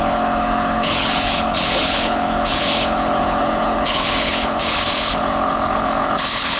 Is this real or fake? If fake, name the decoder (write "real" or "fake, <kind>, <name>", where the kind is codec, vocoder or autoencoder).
fake, codec, HILCodec